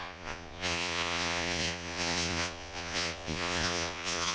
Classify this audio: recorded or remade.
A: remade